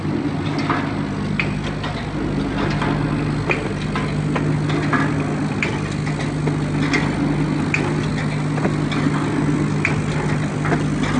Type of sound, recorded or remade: recorded